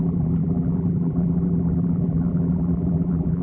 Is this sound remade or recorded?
remade